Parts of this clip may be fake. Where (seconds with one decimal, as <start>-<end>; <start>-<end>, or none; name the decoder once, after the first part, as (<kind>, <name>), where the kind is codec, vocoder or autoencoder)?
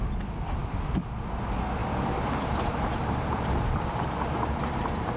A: 1.8-5.2 (vocoder, BigVGAN v2)